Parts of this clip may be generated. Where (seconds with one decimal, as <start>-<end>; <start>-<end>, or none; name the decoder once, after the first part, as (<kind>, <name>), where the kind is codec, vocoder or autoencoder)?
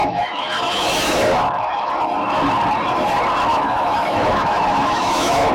0.0-1.9 (autoencoder, DAC-VAE); 3.5-5.5